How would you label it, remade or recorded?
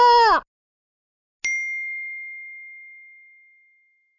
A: recorded